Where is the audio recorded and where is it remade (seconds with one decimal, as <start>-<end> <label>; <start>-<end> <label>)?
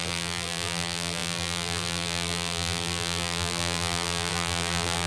0.0-5.1 remade